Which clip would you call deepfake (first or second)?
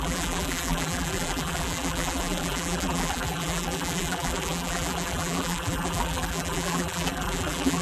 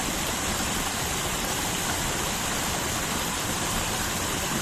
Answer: first